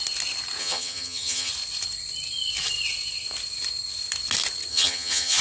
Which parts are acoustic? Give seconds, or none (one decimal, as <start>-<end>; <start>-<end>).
0.0-0.6; 1.5-4.7